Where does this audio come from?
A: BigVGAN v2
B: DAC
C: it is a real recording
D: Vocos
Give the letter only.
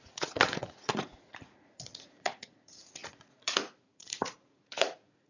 D